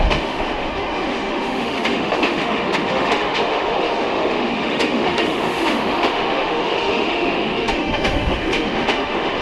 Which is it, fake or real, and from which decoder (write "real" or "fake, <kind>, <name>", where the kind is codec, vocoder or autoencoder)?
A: fake, autoencoder, DAC-VAE